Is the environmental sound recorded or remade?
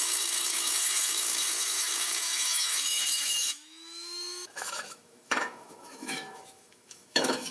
remade